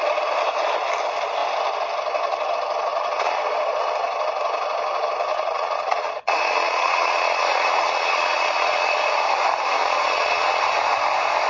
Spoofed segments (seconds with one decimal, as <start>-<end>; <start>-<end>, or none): 2.9-3.4; 5.3-9.0; 9.8-10.6